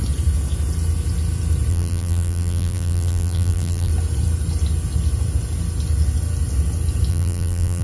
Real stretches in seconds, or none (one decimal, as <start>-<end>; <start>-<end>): 0.0-1.7; 3.9-7.1